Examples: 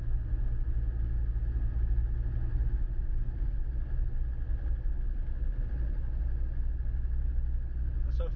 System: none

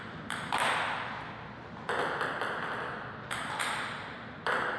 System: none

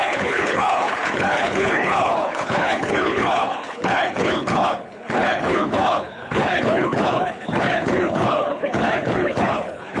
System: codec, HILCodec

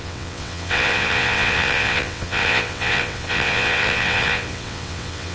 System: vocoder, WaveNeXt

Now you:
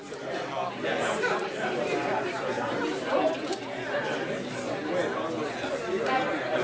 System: none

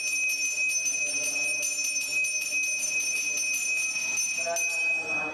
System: none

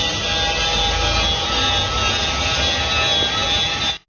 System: none